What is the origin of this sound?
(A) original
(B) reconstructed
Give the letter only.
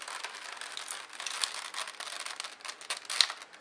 A